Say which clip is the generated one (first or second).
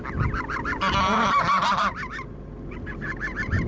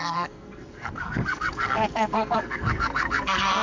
second